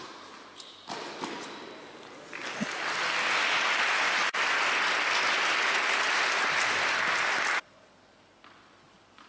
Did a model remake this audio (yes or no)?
no